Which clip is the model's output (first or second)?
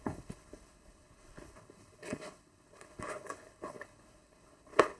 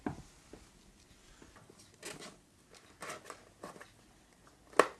first